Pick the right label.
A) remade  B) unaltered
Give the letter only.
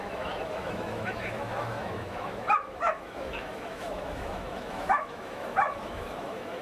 A